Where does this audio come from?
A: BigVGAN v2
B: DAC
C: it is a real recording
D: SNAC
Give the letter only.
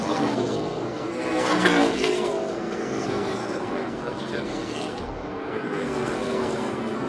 D